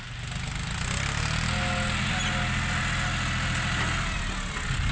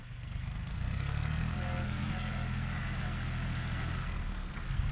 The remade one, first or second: second